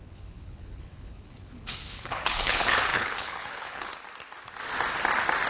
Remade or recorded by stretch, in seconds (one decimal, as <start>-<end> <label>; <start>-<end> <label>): 0.0-3.9 remade; 3.9-5.5 recorded

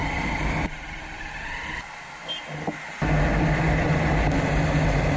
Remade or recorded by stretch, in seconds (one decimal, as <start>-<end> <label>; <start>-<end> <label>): 0.0-5.2 recorded